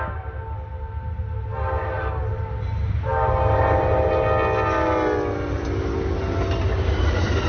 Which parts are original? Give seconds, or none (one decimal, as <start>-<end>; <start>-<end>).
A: 0.0-7.5